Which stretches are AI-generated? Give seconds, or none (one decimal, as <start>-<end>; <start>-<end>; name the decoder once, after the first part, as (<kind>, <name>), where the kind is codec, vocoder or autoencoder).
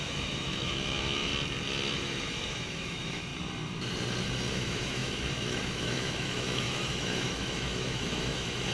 0.0-1.3 (autoencoder, DAC-VAE); 1.9-3.3; 4.5-8.7